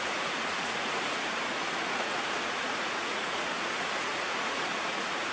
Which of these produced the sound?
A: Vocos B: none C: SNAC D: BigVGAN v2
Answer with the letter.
A